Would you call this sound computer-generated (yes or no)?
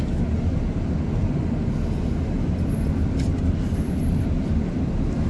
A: no